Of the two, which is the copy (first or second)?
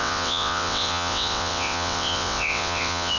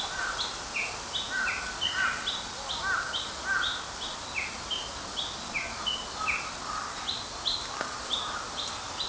first